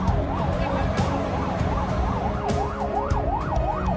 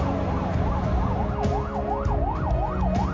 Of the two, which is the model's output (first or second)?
first